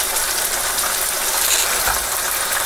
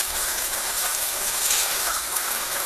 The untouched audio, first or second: first